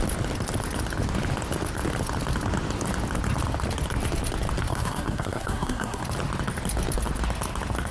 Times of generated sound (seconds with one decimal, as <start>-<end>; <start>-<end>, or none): 4.7-6.0